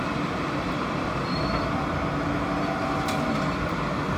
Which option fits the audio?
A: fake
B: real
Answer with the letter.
B